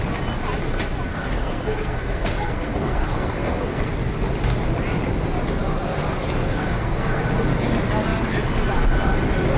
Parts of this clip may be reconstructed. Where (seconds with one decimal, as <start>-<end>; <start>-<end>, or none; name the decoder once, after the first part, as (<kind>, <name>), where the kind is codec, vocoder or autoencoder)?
1.1-3.9 (codec, SNAC); 6.4-7.2